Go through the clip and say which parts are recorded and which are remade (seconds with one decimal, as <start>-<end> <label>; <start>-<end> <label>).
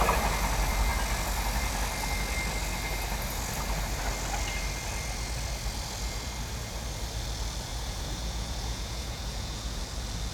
0.0-7.7 recorded; 7.7-9.8 remade; 9.8-10.3 recorded